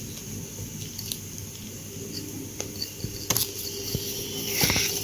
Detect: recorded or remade recorded